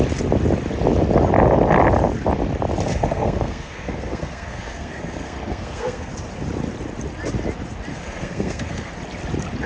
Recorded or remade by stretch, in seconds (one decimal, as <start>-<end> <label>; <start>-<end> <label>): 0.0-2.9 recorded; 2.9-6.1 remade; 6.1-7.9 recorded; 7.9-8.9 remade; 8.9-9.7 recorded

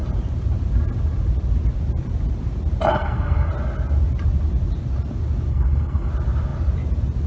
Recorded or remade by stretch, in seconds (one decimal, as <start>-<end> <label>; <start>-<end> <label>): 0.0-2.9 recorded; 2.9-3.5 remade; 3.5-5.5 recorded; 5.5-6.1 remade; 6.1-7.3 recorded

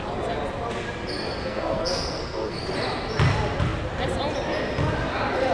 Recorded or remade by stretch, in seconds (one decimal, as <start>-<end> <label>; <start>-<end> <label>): 0.0-1.4 recorded; 1.4-2.6 remade; 2.6-5.5 recorded